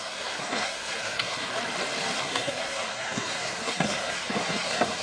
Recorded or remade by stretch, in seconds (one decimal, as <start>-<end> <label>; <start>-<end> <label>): 0.0-1.5 remade; 1.5-2.2 recorded; 2.2-5.0 remade